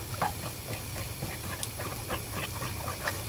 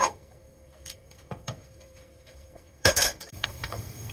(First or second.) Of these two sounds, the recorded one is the first